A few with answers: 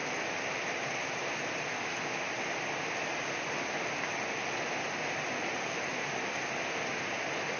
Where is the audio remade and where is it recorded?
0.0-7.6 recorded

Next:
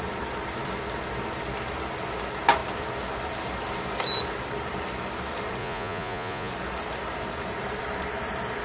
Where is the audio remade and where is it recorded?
0.0-5.6 recorded; 5.6-6.5 remade; 6.5-8.6 recorded